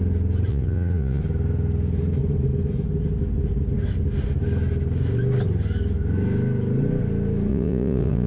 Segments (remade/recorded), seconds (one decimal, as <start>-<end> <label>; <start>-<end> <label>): 0.0-0.5 recorded; 0.5-1.2 remade; 1.2-7.5 recorded; 7.5-8.3 remade